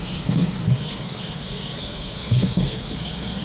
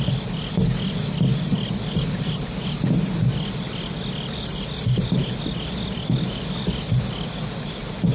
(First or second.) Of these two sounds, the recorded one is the second